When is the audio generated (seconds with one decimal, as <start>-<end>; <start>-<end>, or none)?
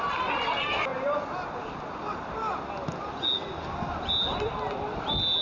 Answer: none